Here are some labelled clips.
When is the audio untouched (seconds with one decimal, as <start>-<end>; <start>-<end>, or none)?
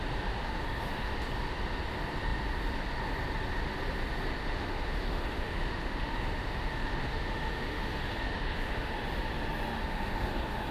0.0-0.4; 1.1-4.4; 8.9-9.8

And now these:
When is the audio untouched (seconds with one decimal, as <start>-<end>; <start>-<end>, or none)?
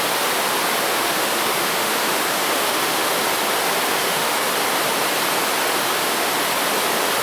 0.0-0.9; 3.1-3.9; 4.5-5.8; 6.3-7.2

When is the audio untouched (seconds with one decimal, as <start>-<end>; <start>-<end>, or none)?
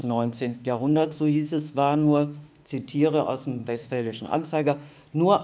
2.7-3.6; 5.0-5.4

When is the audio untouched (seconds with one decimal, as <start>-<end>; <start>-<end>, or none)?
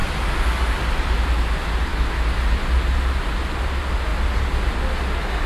0.0-1.9; 2.4-5.5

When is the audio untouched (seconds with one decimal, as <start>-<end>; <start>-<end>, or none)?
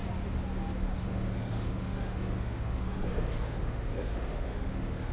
0.0-1.0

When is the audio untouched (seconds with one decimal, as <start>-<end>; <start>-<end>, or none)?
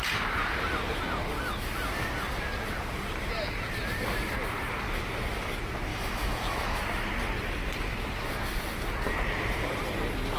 0.0-5.9; 6.8-10.4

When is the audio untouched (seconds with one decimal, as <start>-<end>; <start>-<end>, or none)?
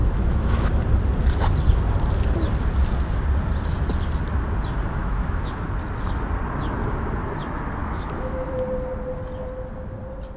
0.7-5.0; 5.6-7.8; 8.5-10.4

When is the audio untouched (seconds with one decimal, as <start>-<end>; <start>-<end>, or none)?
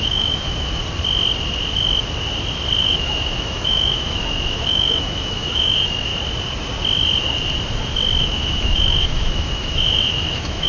0.8-2.8; 6.1-8.2